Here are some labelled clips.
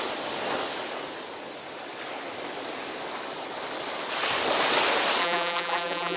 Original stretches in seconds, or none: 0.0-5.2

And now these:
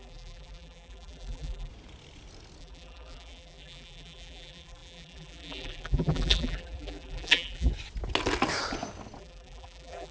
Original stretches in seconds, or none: 1.7-2.6; 7.7-9.2

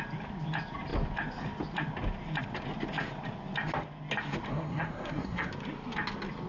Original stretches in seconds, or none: 0.0-4.5; 5.5-6.5

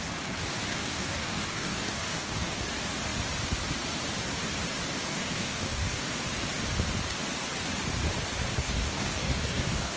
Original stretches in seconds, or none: 0.0-0.7; 2.6-5.1; 6.0-8.6